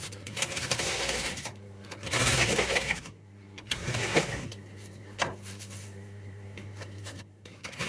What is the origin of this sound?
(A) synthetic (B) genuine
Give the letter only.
A